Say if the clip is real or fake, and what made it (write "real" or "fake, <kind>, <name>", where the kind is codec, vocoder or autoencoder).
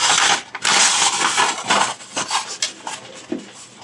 real